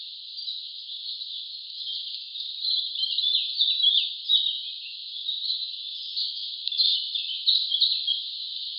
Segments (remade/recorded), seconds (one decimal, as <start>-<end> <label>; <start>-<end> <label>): 0.0-6.4 recorded; 6.4-8.2 remade; 8.2-8.8 recorded